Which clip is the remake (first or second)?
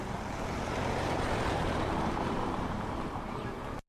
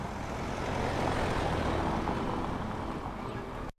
first